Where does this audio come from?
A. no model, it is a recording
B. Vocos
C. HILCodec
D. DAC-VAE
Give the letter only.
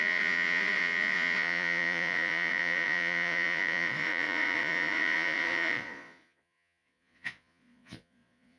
B